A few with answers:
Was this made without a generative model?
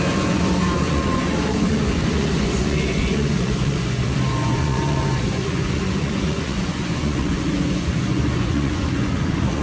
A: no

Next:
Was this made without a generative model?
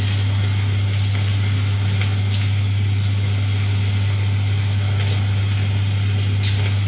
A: yes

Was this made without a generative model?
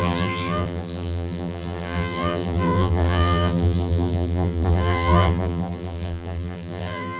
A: no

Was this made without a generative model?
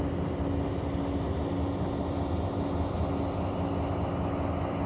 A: yes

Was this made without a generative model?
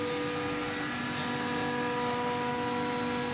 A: yes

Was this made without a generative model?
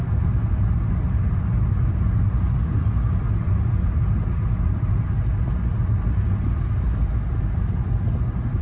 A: yes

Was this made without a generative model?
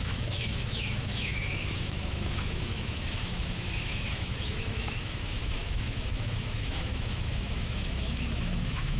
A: no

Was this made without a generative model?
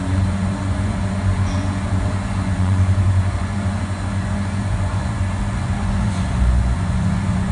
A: no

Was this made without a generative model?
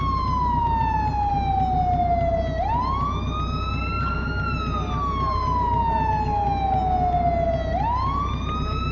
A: yes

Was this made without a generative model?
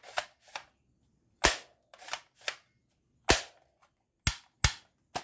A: yes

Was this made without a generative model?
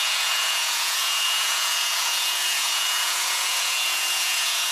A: no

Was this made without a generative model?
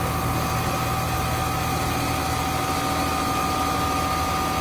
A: yes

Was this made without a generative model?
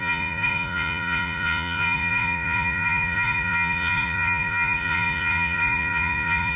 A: no